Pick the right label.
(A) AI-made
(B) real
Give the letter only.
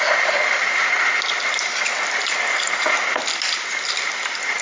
B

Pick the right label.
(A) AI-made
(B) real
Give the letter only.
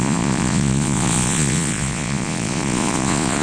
A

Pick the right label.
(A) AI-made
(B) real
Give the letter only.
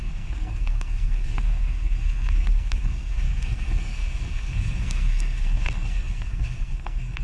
A